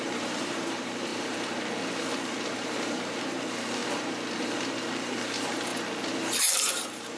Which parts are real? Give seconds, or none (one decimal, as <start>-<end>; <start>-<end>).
1.1-2.0; 3.8-4.4; 5.7-6.4